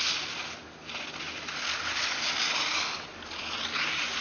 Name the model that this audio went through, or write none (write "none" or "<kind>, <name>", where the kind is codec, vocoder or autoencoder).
none